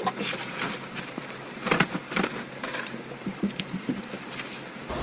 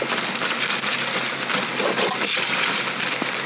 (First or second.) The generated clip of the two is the first